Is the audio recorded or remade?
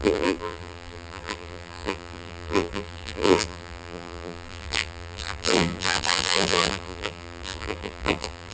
remade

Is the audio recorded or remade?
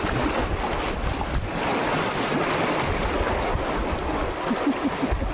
recorded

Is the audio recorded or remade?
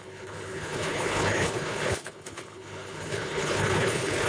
remade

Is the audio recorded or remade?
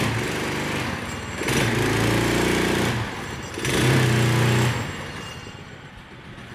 recorded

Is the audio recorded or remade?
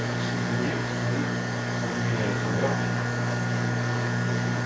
remade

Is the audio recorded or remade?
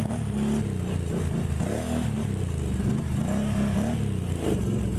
recorded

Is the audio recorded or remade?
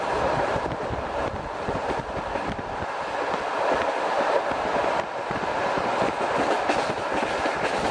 recorded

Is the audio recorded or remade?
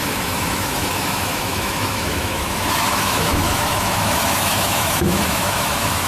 remade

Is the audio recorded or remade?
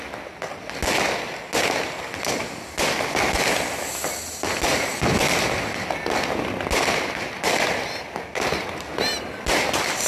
recorded